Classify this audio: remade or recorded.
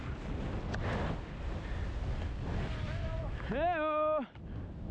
recorded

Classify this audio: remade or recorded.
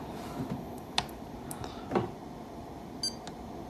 recorded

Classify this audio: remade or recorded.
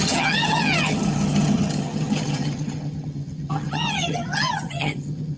remade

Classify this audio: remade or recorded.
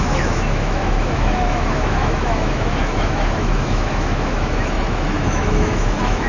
remade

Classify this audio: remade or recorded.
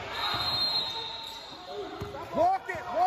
recorded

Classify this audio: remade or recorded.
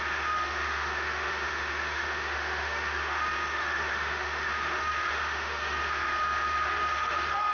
remade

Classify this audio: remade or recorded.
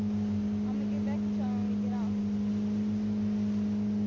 recorded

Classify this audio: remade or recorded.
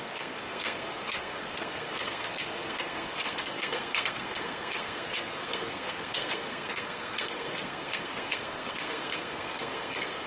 remade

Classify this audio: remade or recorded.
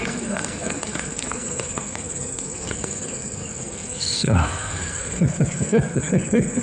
remade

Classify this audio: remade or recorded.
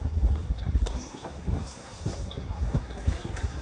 remade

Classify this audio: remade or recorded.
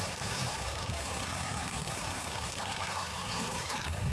remade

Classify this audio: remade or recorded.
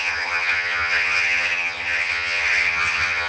remade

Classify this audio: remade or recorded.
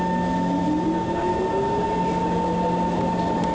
recorded